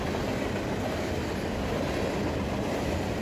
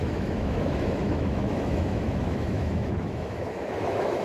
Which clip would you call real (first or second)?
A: first